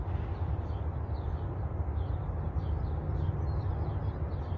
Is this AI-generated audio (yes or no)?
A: no